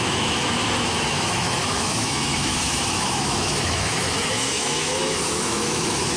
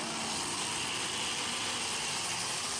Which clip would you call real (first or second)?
second